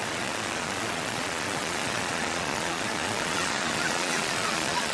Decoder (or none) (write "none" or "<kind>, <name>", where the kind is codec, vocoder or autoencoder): vocoder, Vocos